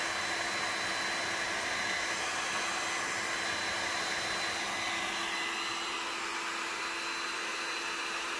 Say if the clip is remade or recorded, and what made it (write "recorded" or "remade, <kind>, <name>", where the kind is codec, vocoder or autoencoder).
recorded